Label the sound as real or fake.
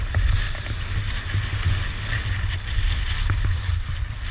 real